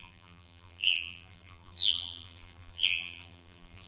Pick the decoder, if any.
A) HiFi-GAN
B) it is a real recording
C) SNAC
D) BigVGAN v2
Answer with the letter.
D